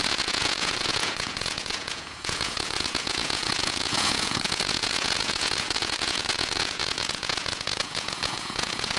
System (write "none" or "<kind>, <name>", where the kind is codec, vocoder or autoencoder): vocoder, Vocos